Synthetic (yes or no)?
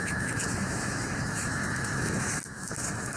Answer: yes